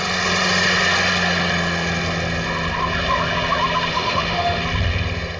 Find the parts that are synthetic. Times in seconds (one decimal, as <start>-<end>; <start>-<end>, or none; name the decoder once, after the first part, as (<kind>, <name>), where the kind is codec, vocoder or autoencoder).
3.9-4.6 (autoencoder, DAC-VAE)